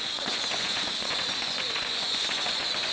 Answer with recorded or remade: remade